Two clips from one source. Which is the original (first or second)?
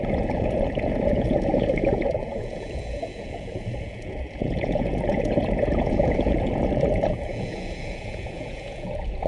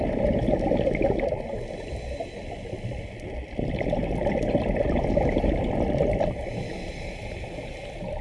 second